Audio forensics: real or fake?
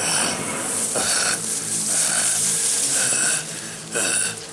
fake